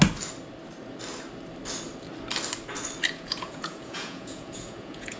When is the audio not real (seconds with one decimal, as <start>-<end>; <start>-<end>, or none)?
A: 3.1-5.2